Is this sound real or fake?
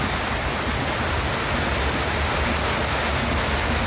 real